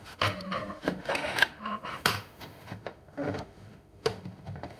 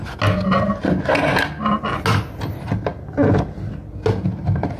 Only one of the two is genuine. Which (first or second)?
second